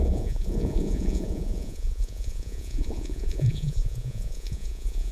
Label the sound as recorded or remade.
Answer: remade